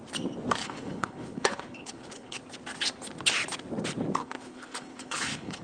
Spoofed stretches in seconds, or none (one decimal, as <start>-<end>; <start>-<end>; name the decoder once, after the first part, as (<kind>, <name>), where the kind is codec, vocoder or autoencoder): 0.6-2.4 (codec, HILCodec); 4.2-5.6